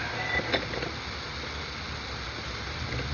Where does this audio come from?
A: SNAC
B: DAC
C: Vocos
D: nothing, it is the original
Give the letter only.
D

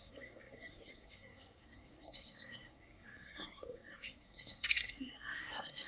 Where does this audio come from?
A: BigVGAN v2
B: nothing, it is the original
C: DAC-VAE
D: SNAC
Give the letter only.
D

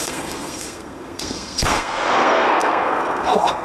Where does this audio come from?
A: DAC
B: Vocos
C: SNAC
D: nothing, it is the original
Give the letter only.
C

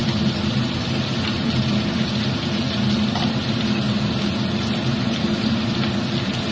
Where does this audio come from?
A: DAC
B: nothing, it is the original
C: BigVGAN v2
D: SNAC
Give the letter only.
B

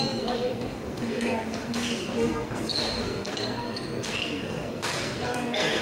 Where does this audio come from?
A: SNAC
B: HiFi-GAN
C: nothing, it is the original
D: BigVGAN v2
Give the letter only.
A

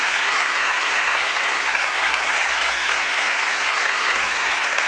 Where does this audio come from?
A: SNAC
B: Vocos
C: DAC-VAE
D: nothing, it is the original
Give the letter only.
A